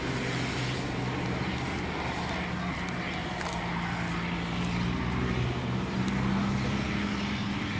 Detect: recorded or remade recorded